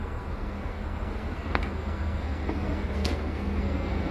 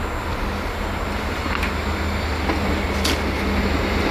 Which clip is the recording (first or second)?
second